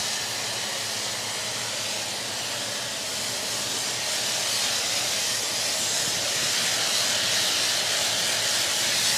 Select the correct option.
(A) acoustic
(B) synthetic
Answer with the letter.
A